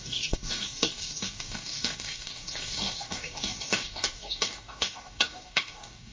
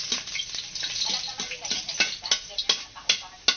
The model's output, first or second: first